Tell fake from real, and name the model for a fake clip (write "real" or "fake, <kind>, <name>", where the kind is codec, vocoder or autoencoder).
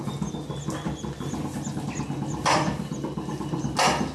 real